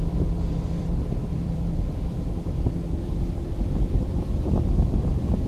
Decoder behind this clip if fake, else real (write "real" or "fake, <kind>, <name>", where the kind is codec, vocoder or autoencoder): fake, vocoder, BigVGAN v2